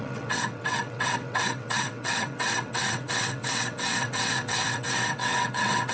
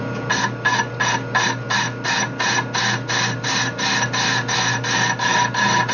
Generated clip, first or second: first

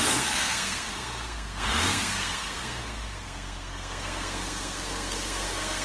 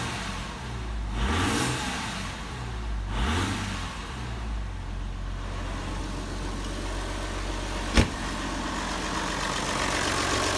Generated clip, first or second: first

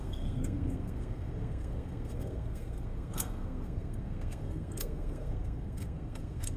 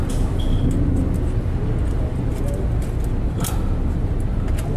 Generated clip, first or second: first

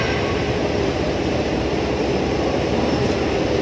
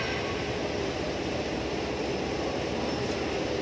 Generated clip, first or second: first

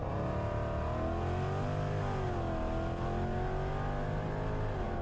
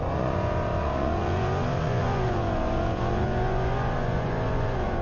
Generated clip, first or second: second